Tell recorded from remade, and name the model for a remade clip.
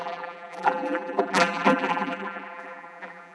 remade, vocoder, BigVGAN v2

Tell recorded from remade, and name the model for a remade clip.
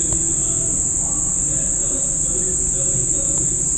recorded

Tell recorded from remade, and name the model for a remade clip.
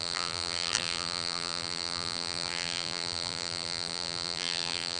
remade, vocoder, BigVGAN v2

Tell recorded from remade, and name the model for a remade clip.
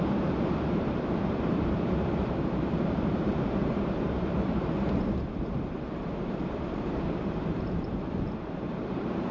remade, vocoder, BigVGAN v2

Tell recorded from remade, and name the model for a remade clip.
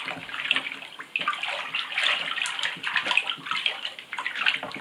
recorded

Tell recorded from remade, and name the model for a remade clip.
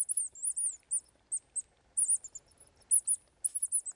recorded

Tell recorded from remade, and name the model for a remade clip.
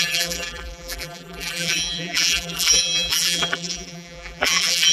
remade, vocoder, BigVGAN v2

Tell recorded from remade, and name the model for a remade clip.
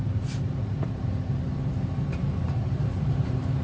remade, vocoder, BigVGAN v2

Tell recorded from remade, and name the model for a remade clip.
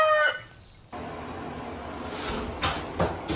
recorded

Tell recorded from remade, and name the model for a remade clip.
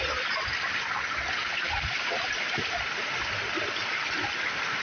recorded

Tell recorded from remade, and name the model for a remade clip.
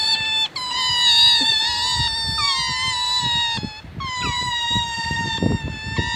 recorded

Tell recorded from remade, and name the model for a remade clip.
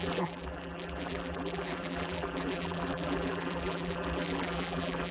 remade, vocoder, BigVGAN v2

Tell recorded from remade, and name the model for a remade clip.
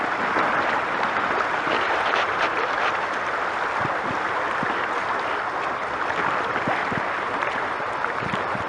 recorded